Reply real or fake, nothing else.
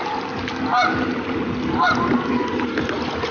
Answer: real